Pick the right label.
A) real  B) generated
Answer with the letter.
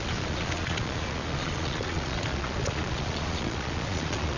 B